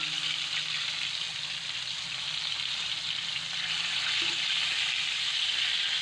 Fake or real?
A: real